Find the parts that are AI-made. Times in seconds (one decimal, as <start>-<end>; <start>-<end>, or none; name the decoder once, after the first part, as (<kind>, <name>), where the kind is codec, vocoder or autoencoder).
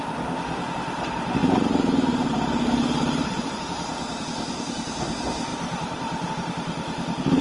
1.4-4.2 (vocoder, BigVGAN v2); 5.5-6.3